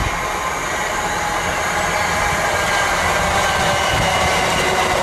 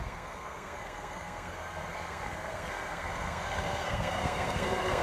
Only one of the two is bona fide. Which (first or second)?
first